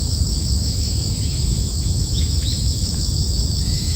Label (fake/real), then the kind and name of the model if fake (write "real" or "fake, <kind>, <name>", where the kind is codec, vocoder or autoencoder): fake, autoencoder, DAC-VAE